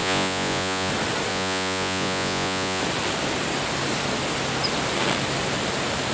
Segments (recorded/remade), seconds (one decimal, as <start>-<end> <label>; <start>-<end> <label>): 0.0-0.9 remade; 0.9-1.3 recorded; 1.3-2.8 remade; 2.8-6.1 recorded

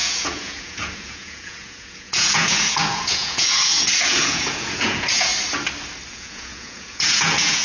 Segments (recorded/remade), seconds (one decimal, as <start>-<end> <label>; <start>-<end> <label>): 0.0-5.3 remade; 5.3-6.1 recorded; 6.1-7.6 remade

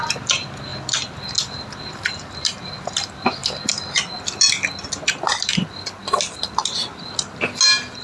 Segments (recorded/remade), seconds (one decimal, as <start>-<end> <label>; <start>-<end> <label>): 0.0-8.0 recorded

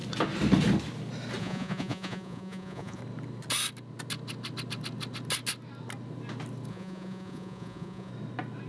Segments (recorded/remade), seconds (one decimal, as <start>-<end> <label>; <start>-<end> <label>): 0.0-1.4 recorded; 1.4-3.0 remade; 3.0-6.7 recorded; 6.7-8.1 remade; 8.1-8.7 recorded

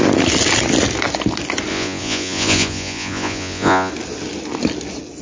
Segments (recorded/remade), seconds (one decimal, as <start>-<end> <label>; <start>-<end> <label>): 0.0-1.7 recorded; 1.7-3.9 remade; 3.9-5.2 recorded

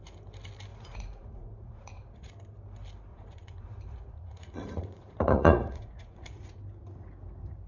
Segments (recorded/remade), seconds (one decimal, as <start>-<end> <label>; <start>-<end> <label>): 0.0-0.7 recorded; 0.7-2.3 remade; 2.3-3.1 recorded; 3.1-6.6 remade; 6.6-7.7 recorded

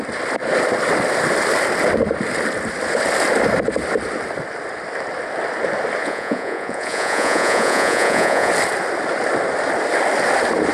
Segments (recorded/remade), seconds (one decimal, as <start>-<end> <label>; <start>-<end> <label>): 0.0-6.0 recorded; 6.0-8.5 remade; 8.5-10.7 recorded